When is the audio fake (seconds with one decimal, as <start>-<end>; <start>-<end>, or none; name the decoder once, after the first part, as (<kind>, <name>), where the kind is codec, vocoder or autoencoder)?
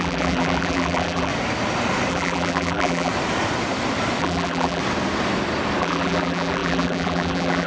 0.0-1.3 (vocoder, BigVGAN v2); 2.1-3.1; 4.2-4.8; 5.8-7.7